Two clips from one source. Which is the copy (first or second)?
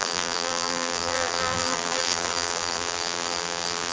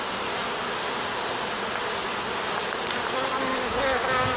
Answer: first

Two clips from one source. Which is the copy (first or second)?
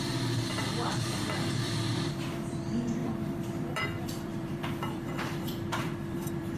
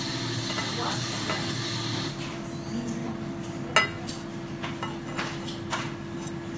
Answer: first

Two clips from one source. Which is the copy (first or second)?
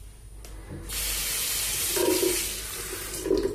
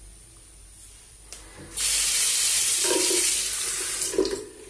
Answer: second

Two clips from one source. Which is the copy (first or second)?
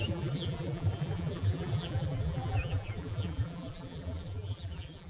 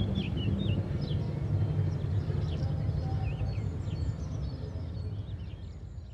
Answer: first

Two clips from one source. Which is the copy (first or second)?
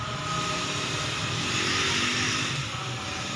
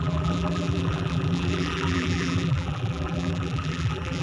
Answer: second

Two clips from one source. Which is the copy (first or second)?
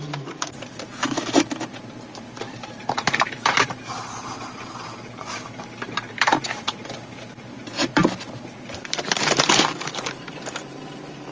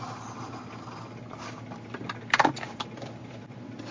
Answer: first